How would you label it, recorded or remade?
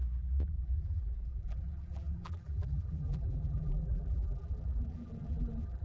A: remade